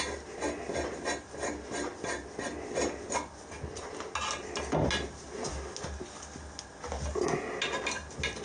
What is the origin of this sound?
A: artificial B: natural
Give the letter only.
B